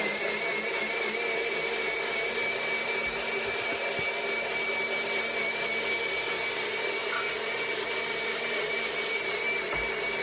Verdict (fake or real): real